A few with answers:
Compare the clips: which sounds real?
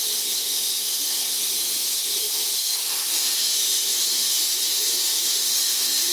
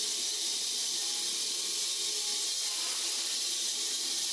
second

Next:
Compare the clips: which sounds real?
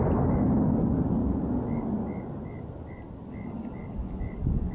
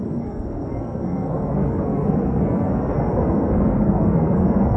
first